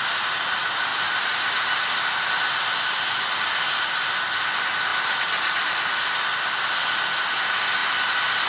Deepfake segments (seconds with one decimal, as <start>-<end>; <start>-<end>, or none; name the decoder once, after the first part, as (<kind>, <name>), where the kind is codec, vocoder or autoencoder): 0.9-1.8 (vocoder, BigVGAN v2); 4.9-5.7